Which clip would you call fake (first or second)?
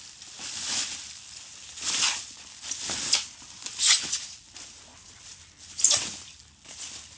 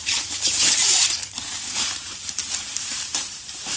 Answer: second